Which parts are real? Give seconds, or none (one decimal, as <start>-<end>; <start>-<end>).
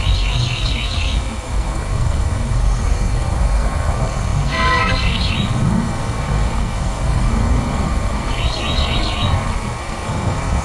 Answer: none